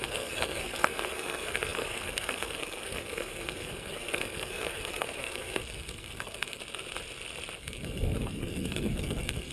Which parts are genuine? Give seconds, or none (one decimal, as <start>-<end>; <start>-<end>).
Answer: 6.6-7.6

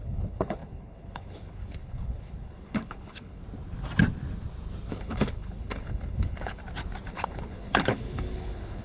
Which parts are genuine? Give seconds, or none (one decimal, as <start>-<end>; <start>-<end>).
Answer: 3.4-4.9; 6.6-7.1